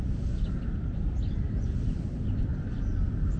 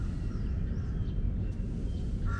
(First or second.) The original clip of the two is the second